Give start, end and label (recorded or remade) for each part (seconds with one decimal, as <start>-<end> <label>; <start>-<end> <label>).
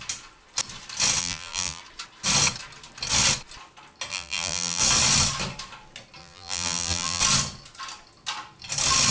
0.0-1.2 recorded; 1.2-1.8 remade; 1.8-4.1 recorded; 4.1-4.8 remade; 4.8-6.2 recorded; 6.2-7.2 remade; 7.2-9.1 recorded